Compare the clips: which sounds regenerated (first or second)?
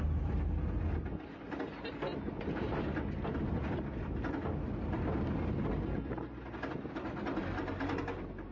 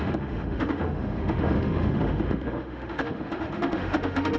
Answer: second